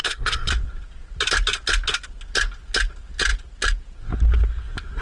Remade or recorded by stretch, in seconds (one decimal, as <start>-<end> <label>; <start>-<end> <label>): 0.0-0.5 remade; 0.5-5.0 recorded